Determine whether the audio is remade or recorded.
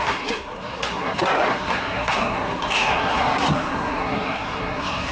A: remade